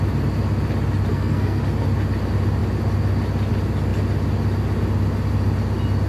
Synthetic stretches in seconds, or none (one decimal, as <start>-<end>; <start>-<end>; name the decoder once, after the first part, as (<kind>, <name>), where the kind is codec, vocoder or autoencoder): 1.1-1.6 (codec, SNAC)